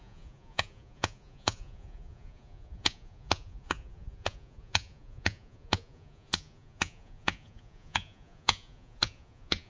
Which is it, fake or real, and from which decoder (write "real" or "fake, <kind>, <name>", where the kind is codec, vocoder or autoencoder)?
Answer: fake, vocoder, Vocos